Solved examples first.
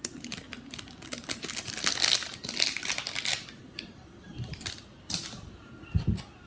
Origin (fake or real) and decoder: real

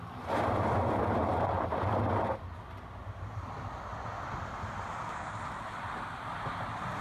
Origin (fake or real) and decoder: fake, vocoder, BigVGAN v2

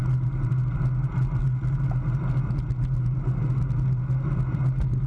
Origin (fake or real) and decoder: real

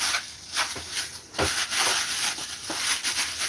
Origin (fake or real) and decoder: real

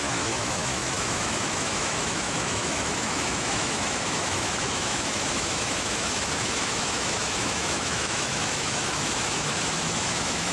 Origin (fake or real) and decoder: fake, autoencoder, DAC-VAE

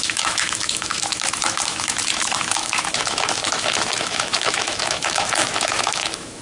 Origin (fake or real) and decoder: fake, autoencoder, DAC-VAE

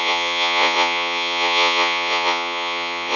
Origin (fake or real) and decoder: fake, vocoder, Vocos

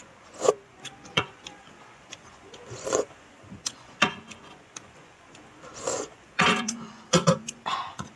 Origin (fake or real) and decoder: fake, vocoder, Vocos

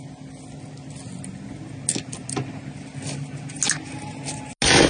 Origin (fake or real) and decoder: real